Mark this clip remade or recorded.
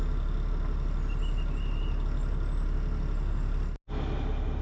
recorded